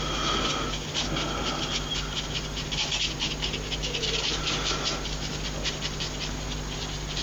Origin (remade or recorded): recorded